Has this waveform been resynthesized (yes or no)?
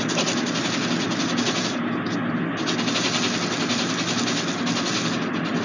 no